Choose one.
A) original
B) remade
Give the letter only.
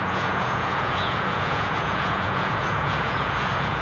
B